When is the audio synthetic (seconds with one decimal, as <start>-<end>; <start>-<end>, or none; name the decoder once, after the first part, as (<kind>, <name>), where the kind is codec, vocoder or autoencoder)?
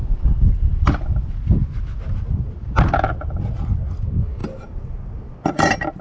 none